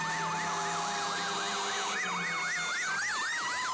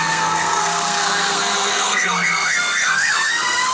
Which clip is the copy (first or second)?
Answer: second